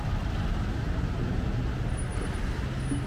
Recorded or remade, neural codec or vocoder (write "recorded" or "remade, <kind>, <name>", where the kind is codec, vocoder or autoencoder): recorded